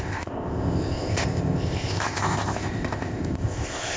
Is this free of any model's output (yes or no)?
no